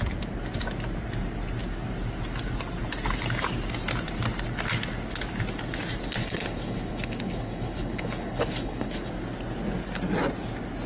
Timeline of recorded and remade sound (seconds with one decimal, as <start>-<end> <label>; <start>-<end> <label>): 0.0-6.2 recorded; 6.2-9.1 remade; 9.1-10.9 recorded

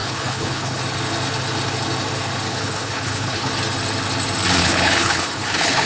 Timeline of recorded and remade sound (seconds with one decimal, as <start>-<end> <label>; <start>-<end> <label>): 0.0-0.8 remade; 0.8-2.5 recorded; 2.5-3.5 remade; 3.5-4.6 recorded; 4.6-5.9 remade

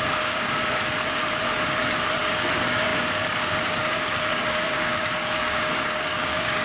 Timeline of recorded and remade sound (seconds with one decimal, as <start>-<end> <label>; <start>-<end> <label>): 0.0-0.6 remade; 0.6-2.2 recorded; 2.2-6.6 remade

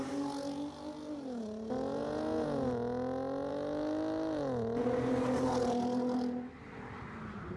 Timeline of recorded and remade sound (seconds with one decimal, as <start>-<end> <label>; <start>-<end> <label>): 0.0-3.5 recorded; 3.5-4.8 remade; 4.8-7.6 recorded